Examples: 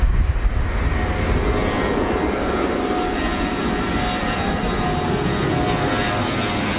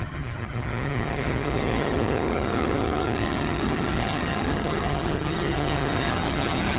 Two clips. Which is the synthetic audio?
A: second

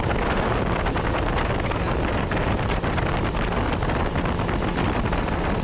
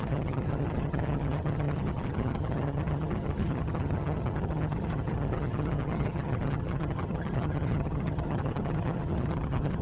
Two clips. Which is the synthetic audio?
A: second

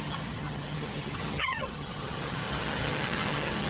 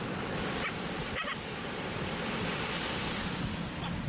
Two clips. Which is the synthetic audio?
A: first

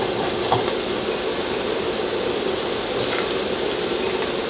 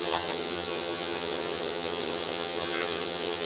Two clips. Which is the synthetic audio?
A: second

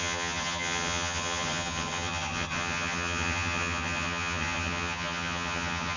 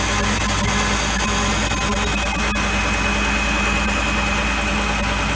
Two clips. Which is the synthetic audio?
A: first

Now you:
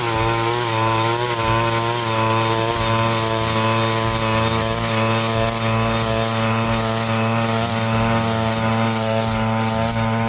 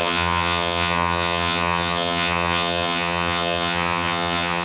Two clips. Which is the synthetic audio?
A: second